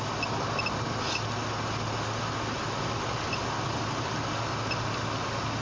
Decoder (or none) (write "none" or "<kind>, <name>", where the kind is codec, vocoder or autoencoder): none